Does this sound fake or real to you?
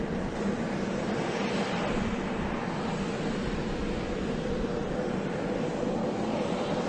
real